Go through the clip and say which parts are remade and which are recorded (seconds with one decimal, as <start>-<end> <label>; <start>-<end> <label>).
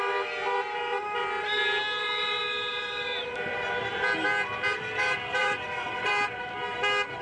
0.0-5.4 recorded; 5.4-6.1 remade; 6.1-7.2 recorded